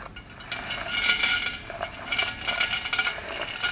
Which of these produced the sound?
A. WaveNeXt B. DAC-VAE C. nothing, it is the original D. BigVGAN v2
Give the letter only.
C